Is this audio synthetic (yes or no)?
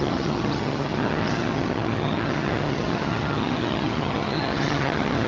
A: yes